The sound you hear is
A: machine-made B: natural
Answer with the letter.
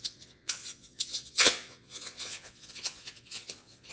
A